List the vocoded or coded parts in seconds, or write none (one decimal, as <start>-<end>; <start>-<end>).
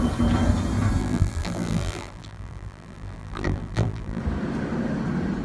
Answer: 1.0-4.2